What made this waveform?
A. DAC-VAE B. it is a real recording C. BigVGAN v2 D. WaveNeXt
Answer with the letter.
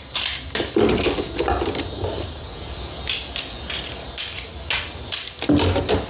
B